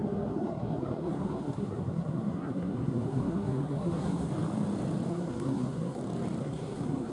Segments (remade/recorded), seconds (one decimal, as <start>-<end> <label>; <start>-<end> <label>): 0.0-4.3 remade; 4.3-5.1 recorded; 5.1-6.0 remade; 6.0-6.4 recorded; 6.4-7.1 remade